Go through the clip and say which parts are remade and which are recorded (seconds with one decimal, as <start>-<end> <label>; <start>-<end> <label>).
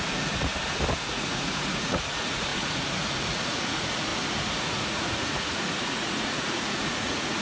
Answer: 0.0-0.5 remade; 0.5-1.0 recorded; 1.0-4.1 remade; 4.1-4.6 recorded; 4.6-7.4 remade